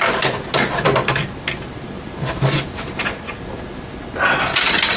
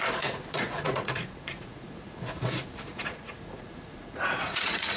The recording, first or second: first